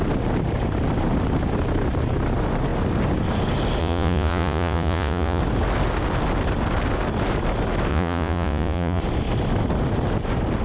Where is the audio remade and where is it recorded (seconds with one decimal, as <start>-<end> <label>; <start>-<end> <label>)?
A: 0.0-3.8 recorded; 3.8-5.4 remade; 5.4-7.9 recorded; 7.9-9.0 remade; 9.0-10.6 recorded